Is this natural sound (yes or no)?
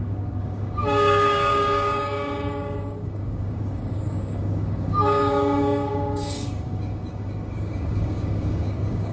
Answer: no